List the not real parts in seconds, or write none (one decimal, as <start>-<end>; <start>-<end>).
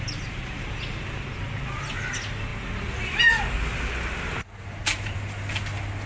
none